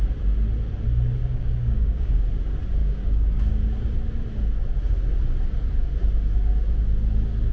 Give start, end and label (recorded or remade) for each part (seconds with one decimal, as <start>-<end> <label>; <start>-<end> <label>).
0.0-1.2 recorded; 1.2-2.1 remade; 2.1-2.8 recorded; 2.8-3.4 remade; 3.4-7.5 recorded